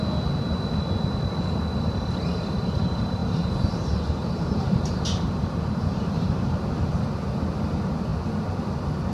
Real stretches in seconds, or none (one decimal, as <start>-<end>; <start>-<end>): 0.0-3.2; 6.9-9.1